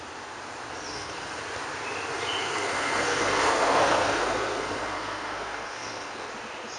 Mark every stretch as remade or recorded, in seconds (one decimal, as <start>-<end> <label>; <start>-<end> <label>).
0.0-0.9 recorded; 0.9-1.4 remade; 1.4-2.4 recorded; 2.4-6.3 remade; 6.3-6.8 recorded